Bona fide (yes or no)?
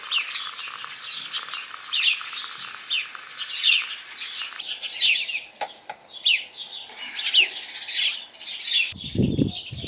yes